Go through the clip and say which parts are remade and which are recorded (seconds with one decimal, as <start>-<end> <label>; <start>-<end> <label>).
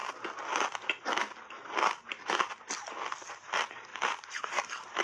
0.0-3.9 recorded; 3.9-4.6 remade; 4.6-5.0 recorded